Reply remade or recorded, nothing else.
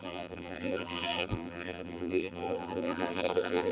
remade